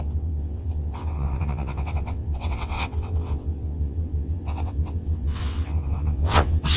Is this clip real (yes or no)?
no